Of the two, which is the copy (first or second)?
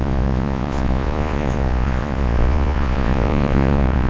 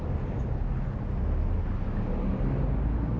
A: first